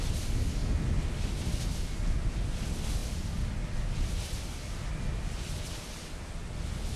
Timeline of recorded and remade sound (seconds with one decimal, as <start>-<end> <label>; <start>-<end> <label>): 0.0-7.0 recorded